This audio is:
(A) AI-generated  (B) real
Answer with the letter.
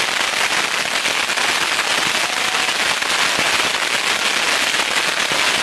B